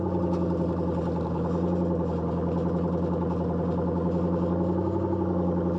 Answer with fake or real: real